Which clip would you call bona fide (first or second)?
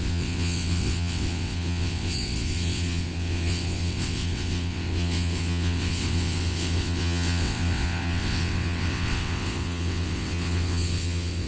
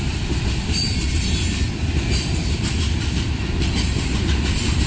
second